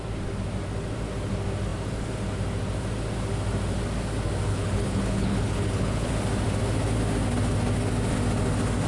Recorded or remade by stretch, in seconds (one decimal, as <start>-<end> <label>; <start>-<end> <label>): 0.0-4.5 recorded; 4.5-6.1 remade; 6.1-8.9 recorded

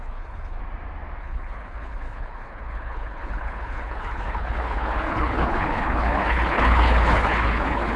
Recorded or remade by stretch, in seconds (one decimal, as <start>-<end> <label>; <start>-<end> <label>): 0.0-0.6 remade; 0.6-1.2 recorded; 1.2-8.0 remade

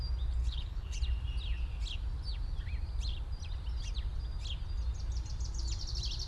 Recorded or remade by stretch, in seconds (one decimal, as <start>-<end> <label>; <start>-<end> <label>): 0.0-0.4 recorded; 0.4-1.0 remade; 1.0-6.3 recorded

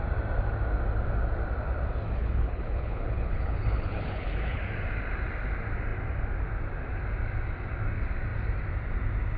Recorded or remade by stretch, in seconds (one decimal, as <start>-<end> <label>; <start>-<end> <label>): 0.0-2.2 recorded; 2.2-4.6 remade; 4.6-9.4 recorded

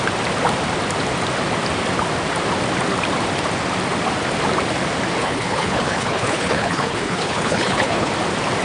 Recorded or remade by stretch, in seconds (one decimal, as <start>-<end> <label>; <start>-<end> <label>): 0.0-5.2 recorded; 5.2-8.1 remade; 8.1-8.6 recorded